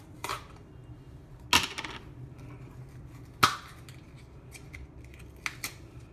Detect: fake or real real